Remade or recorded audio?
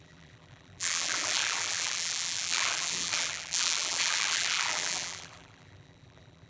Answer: remade